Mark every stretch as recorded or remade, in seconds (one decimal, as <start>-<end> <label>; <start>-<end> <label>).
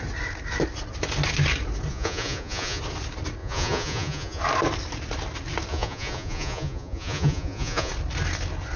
0.0-1.9 recorded; 1.9-2.8 remade; 2.8-3.4 recorded; 3.4-4.4 remade; 4.4-5.7 recorded; 5.7-7.9 remade; 7.9-8.8 recorded